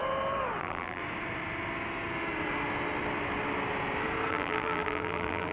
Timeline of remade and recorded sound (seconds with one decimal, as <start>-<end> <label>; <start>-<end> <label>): 0.0-0.6 recorded; 0.6-1.0 remade; 1.0-4.3 recorded; 4.3-5.5 remade